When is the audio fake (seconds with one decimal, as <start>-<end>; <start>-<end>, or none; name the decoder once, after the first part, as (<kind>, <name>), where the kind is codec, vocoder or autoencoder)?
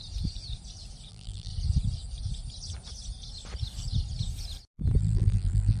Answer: 1.1-1.5 (vocoder, BigVGAN v2); 5.0-5.8